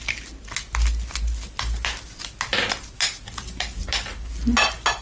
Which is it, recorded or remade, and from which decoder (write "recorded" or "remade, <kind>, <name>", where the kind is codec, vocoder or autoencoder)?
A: recorded